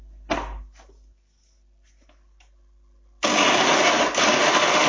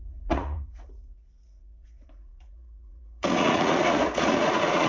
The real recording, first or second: first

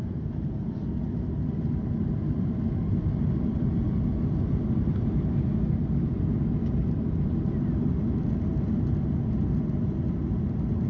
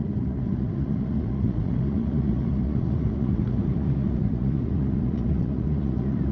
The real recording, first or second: first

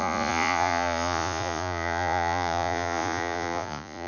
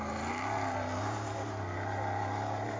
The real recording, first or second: second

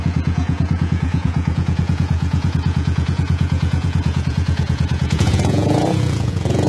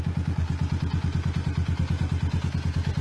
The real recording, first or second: second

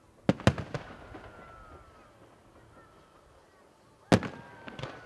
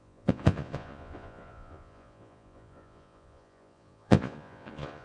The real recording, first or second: first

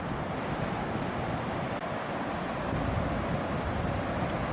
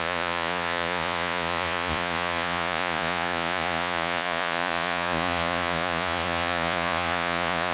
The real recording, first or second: first